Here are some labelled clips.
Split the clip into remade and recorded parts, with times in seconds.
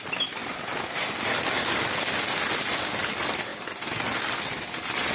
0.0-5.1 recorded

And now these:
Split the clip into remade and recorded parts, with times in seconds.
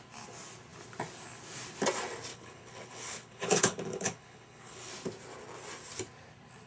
0.0-2.3 recorded; 2.3-4.9 remade; 4.9-6.7 recorded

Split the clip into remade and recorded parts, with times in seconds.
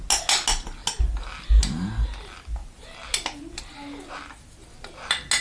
0.0-5.4 recorded